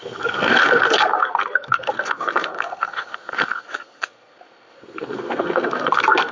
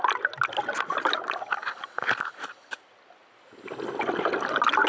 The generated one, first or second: first